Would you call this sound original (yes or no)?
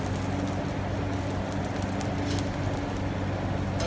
yes